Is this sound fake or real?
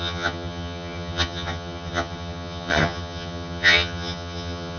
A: fake